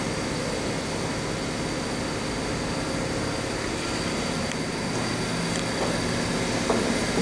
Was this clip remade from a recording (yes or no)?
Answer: no